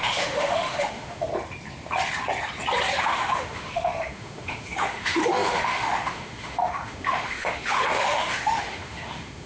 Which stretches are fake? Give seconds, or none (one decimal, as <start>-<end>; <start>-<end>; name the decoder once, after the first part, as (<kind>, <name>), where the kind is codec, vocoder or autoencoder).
0.0-1.3 (autoencoder, DAC-VAE); 3.0-9.5